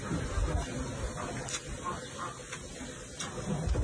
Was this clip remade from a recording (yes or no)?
no